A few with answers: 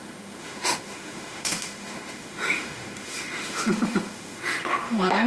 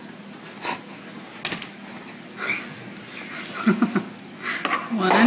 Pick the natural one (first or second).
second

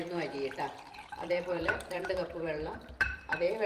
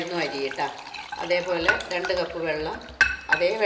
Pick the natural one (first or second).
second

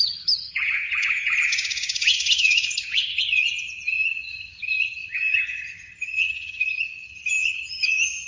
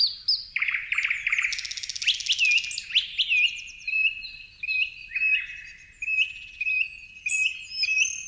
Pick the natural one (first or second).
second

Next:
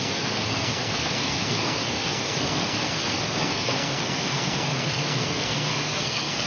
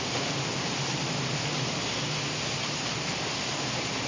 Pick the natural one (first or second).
second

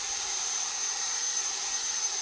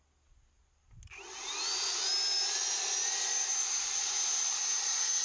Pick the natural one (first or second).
second